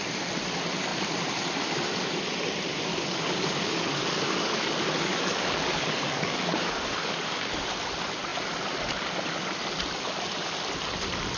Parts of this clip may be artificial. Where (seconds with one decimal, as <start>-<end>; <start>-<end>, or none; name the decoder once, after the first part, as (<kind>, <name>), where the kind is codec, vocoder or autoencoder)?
2.9-7.5 (codec, DAC)